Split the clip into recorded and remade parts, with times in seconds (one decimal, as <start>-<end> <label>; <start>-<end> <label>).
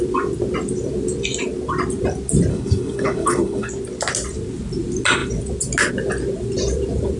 0.0-2.5 recorded; 2.5-3.7 remade; 3.7-7.2 recorded